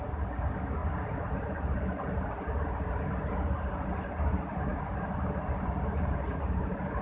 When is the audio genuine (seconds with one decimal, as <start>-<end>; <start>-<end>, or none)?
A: 0.0-0.8; 3.7-4.7